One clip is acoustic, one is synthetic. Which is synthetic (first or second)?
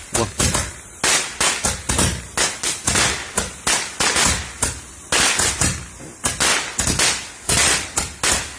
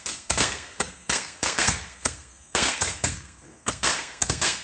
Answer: second